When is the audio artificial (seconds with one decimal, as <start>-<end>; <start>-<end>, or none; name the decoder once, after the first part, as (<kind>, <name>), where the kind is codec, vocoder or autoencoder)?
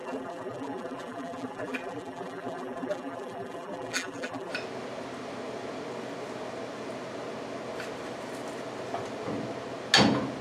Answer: 0.0-4.5 (vocoder, BigVGAN v2)